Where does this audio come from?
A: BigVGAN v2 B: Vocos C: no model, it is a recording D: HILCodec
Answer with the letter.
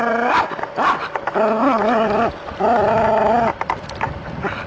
C